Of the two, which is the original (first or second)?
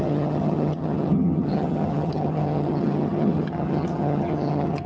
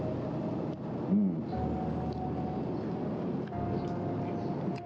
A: second